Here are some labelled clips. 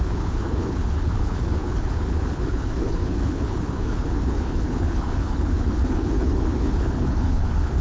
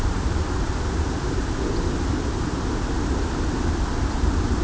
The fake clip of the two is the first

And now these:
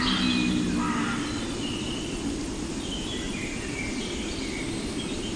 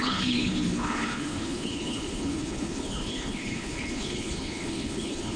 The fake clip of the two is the second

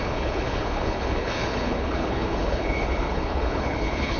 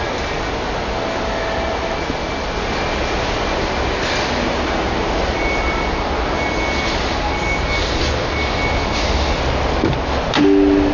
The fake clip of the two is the first